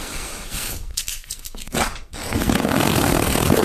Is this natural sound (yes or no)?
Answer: no